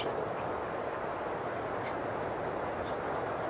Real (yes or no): yes